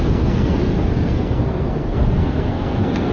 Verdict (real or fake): fake